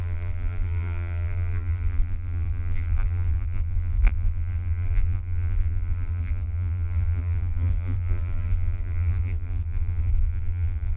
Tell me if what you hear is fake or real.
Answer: fake